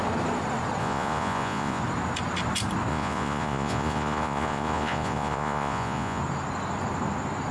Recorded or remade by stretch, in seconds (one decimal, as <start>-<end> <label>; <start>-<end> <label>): 0.0-0.8 recorded; 0.8-1.8 remade; 1.8-2.9 recorded; 2.9-6.2 remade; 6.2-7.5 recorded